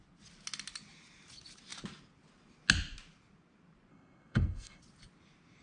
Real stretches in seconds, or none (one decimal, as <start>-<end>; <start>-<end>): 0.0-3.9; 4.8-5.6